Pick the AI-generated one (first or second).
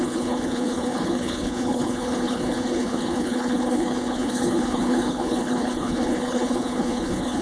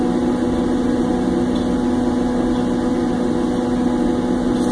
first